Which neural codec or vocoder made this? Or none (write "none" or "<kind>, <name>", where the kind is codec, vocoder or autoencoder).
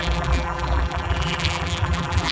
vocoder, BigVGAN v2